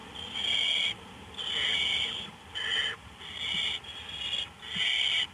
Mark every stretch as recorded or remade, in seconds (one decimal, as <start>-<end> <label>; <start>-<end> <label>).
0.0-5.3 recorded